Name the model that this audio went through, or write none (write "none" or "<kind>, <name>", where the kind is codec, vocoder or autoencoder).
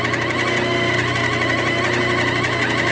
none